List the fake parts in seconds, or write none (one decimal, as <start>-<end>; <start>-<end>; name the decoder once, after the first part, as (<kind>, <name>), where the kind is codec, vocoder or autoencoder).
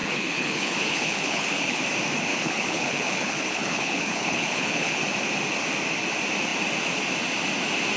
0.0-1.8 (codec, HILCodec); 2.3-5.0